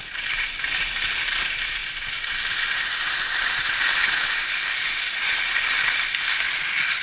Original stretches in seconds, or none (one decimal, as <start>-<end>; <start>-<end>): 0.0-7.0